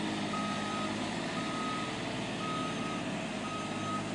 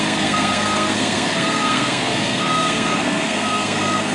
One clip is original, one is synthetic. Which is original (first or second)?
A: first